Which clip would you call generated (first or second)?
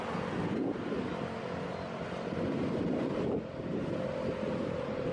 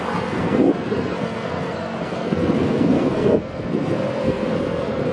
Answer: second